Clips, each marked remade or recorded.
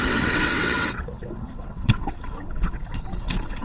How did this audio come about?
remade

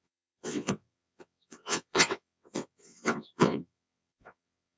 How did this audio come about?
remade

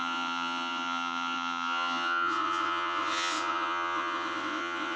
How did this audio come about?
remade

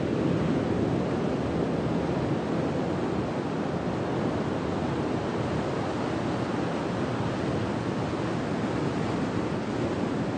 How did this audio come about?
recorded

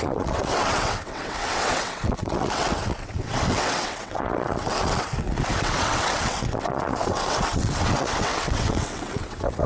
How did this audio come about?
remade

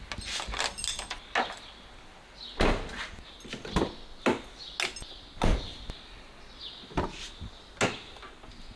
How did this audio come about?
recorded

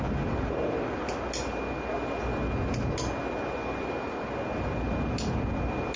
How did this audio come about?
recorded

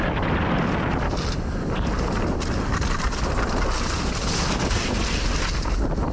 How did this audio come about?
recorded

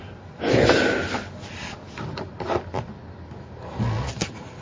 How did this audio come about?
recorded